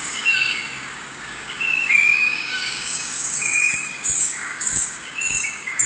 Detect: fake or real fake